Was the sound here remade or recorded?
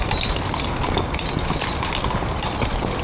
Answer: remade